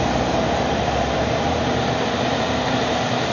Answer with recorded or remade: remade